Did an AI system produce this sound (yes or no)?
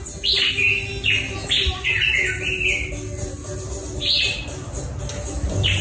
no